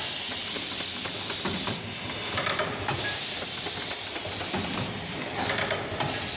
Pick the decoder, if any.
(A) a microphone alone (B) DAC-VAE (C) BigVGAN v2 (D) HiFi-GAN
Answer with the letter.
A